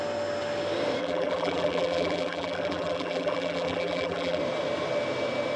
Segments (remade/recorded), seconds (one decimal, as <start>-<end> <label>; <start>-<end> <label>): 0.0-1.0 recorded; 1.0-4.4 remade; 4.4-5.6 recorded

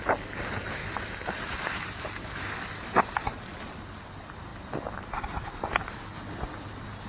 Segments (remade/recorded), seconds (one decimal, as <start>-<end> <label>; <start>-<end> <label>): 0.0-0.8 recorded; 0.8-3.8 remade; 3.8-7.1 recorded

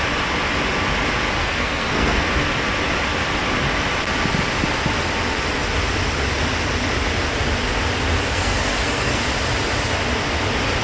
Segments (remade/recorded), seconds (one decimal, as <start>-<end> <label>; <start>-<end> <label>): 0.0-1.4 recorded; 1.4-2.3 remade; 2.3-8.3 recorded; 8.3-9.2 remade; 9.2-10.8 recorded

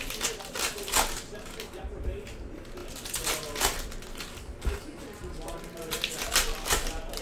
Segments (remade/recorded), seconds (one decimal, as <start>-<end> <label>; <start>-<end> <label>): 0.0-7.2 recorded

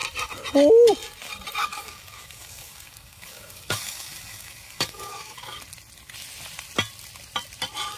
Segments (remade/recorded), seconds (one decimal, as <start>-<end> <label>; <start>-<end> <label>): 0.0-1.6 recorded; 1.6-5.6 remade; 5.6-8.0 recorded

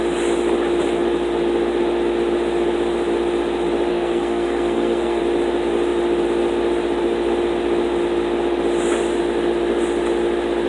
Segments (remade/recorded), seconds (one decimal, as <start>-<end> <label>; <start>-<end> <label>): 0.0-3.9 recorded; 3.9-5.2 remade; 5.2-10.7 recorded

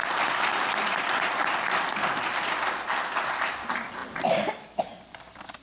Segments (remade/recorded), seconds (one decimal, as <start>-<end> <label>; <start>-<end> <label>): 0.0-5.6 recorded